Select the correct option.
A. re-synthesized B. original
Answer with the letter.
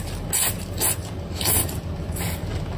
B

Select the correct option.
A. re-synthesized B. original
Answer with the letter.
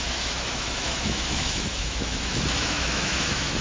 A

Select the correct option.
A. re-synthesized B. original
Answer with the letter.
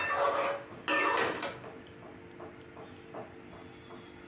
B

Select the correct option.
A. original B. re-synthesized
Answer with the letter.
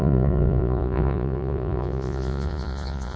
B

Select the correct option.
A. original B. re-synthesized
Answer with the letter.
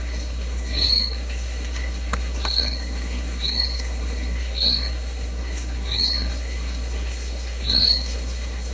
B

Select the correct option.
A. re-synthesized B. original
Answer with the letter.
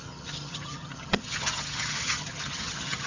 A